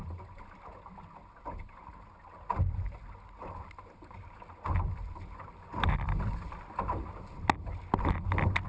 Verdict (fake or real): real